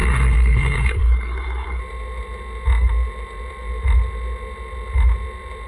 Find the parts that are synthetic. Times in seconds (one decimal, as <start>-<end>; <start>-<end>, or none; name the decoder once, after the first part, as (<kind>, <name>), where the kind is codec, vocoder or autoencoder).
0.0-1.8 (codec, SNAC)